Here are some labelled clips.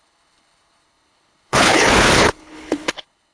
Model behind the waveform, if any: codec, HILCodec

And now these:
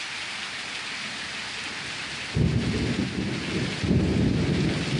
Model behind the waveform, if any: none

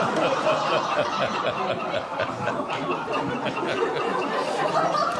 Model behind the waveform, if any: none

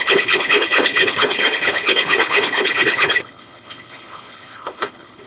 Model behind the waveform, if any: codec, HILCodec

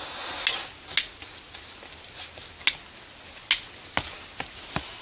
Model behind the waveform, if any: none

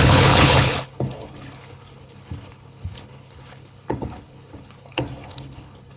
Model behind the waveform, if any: codec, HILCodec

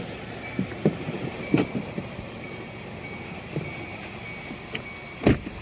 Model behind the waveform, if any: none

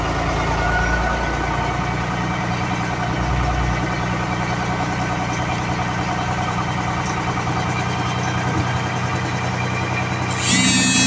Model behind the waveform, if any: none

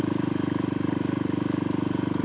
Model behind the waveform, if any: none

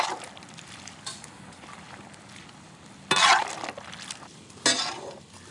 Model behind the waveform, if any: none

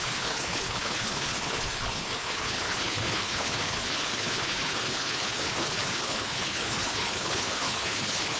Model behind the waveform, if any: codec, HILCodec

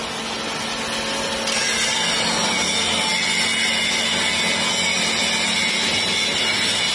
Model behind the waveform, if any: none